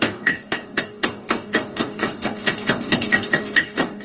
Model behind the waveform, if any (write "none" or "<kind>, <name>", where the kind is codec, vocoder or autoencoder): codec, DAC